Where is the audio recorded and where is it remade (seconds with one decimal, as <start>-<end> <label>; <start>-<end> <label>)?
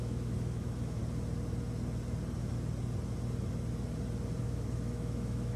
0.0-1.0 remade; 1.0-4.4 recorded; 4.4-5.6 remade